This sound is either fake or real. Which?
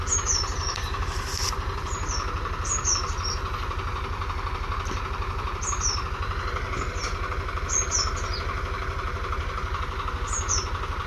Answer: real